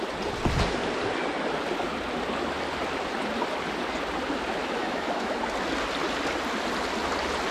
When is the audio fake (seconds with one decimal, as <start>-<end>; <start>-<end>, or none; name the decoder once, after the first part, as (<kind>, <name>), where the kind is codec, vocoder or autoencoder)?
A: 4.6-5.4 (autoencoder, DAC-VAE)